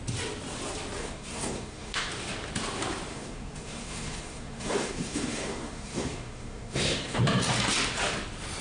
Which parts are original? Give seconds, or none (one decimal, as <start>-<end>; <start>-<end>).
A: 0.0-1.0; 2.1-3.1; 7.2-8.6